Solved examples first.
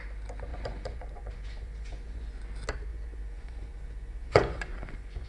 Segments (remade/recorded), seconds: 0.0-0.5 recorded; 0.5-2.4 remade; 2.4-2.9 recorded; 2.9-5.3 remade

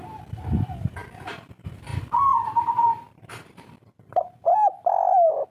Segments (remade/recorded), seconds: 0.0-4.7 remade; 4.7-5.5 recorded

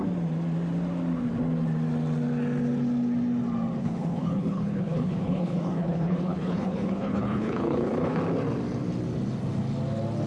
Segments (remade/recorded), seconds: 0.0-3.8 recorded; 3.8-8.2 remade; 8.2-10.3 recorded